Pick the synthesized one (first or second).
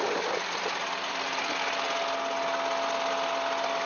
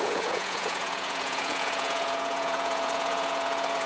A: second